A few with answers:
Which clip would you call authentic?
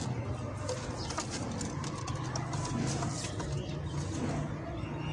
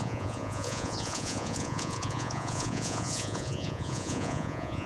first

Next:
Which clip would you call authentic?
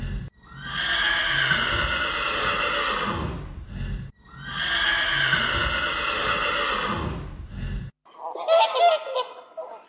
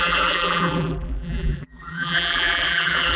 first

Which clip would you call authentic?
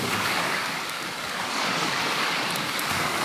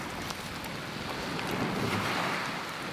second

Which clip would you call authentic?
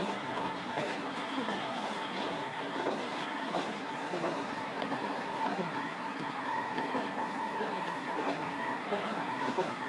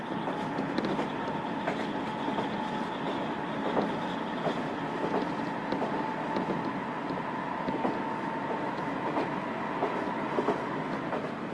second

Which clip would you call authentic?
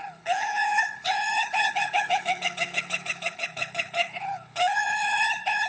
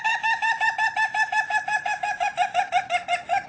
second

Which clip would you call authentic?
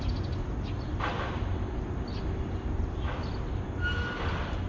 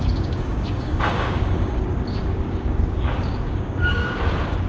first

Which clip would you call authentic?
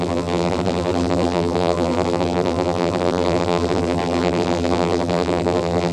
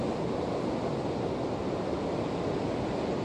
second